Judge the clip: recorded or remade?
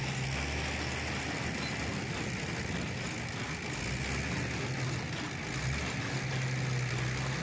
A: recorded